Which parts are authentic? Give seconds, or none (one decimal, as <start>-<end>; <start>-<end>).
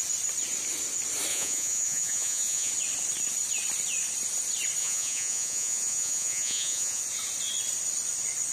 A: 0.0-1.3; 2.7-4.8; 7.0-8.5